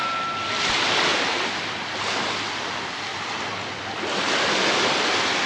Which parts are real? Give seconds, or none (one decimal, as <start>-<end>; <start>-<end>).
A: 0.0-3.1; 3.6-5.5